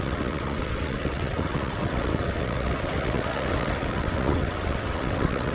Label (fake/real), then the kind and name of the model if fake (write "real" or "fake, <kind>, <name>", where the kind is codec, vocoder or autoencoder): fake, vocoder, WaveNeXt